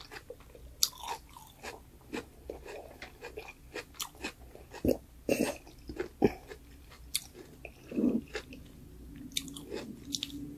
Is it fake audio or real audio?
real